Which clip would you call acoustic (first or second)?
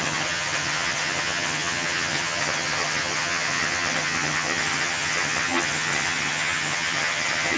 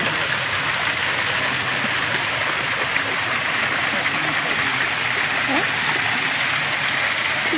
second